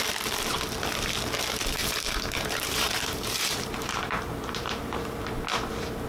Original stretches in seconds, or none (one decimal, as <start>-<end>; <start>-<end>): 0.0-1.8; 4.8-6.1